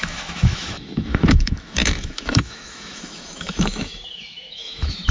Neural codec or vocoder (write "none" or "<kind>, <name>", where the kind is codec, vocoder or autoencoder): autoencoder, DAC-VAE